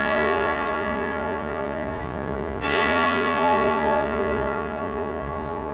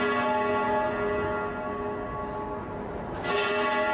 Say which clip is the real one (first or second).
second